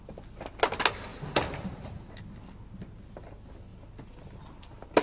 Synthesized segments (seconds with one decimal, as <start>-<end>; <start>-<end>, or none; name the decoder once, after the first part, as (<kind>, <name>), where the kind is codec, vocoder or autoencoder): 1.1-2.1 (vocoder, BigVGAN v2)